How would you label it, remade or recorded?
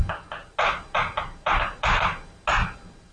recorded